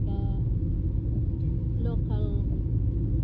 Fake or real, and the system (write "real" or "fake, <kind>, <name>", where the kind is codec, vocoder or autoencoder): real